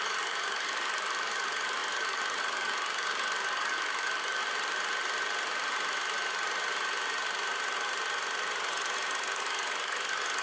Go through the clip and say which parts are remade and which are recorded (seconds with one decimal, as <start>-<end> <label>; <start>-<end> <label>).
0.0-4.4 remade; 4.4-9.4 recorded; 9.4-10.4 remade